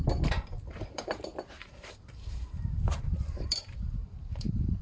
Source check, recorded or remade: remade